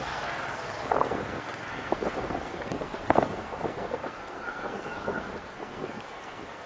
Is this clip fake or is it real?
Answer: fake